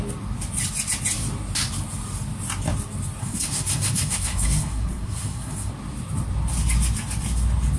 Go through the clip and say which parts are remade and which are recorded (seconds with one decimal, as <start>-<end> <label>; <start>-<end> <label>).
0.0-3.2 recorded; 3.2-5.7 remade; 5.7-7.8 recorded